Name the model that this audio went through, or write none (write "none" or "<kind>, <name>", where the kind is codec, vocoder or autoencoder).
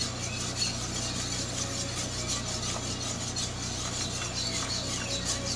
none